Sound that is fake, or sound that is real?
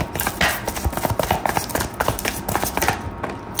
real